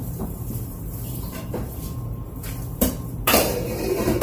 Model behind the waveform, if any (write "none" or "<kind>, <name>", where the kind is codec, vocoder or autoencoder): vocoder, BigVGAN v2